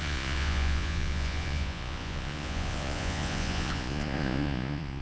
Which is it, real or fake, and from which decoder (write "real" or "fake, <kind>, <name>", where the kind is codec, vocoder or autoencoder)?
fake, vocoder, Vocos